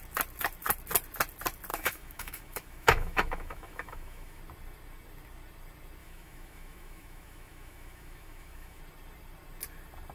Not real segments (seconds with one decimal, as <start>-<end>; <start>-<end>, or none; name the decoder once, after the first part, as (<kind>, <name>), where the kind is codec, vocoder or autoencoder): 1.7-4.4 (autoencoder, DAC-VAE); 6.0-8.8